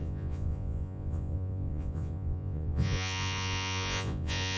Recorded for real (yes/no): no